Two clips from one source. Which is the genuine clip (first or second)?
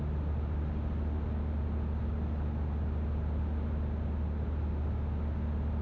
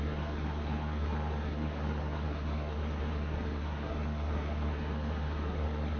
first